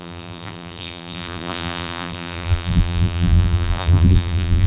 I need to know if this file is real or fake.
fake